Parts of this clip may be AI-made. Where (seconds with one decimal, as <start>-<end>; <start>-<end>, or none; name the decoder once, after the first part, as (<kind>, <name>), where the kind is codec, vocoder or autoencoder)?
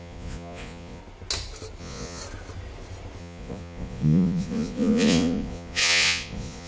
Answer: 0.0-1.0 (vocoder, Vocos); 1.8-2.2; 3.2-6.7